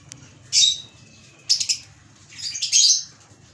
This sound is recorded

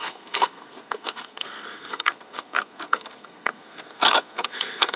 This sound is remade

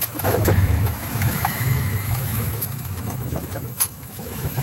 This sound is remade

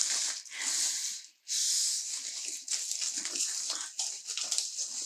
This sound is recorded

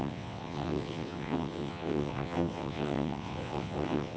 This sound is remade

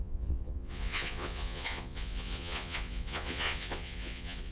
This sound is remade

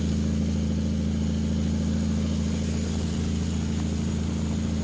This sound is recorded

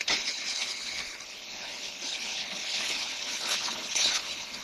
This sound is remade